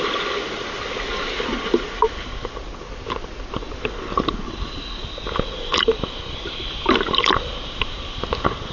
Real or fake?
real